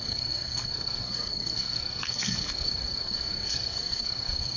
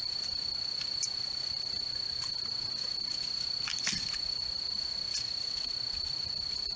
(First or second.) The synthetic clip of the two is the first